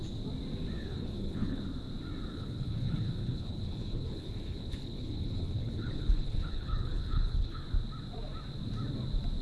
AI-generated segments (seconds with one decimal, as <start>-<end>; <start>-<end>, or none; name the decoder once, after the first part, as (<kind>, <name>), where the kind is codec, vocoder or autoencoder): 0.8-1.6 (codec, HILCodec); 2.3-7.6